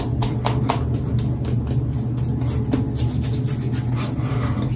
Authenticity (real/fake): real